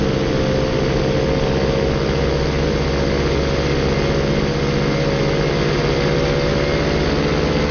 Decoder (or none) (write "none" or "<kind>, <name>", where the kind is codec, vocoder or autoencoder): none